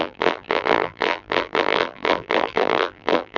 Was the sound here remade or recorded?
remade